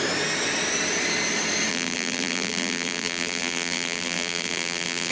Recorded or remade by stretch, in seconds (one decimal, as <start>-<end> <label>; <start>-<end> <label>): 0.0-1.7 recorded; 1.7-5.1 remade